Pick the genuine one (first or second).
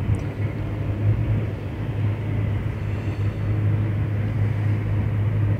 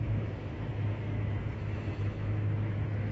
first